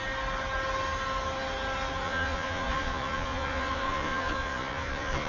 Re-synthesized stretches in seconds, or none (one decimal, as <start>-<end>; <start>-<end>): 2.0-5.3